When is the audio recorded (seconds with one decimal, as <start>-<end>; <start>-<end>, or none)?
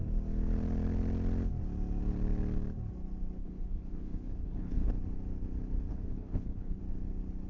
0.0-3.4; 4.9-5.9; 6.8-7.5